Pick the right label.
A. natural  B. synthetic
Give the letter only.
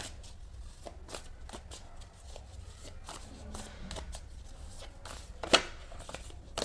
A